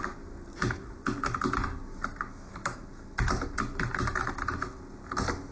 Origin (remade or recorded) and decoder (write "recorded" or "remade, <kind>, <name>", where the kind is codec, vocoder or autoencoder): recorded